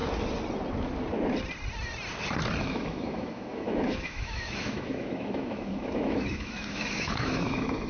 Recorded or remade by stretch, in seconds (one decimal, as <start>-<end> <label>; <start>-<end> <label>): 0.0-2.6 recorded; 2.6-7.9 remade